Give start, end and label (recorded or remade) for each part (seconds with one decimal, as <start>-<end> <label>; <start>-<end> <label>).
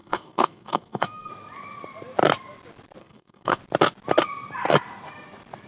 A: 0.0-1.3 remade; 1.3-3.0 recorded; 3.0-3.6 remade; 3.6-5.7 recorded